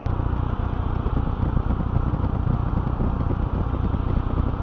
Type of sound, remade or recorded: recorded